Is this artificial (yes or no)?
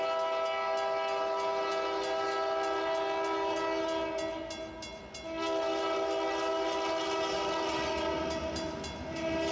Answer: no